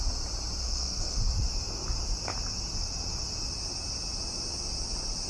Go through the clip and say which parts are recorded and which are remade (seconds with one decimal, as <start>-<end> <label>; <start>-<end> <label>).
0.0-0.6 recorded; 0.6-1.2 remade; 1.2-5.3 recorded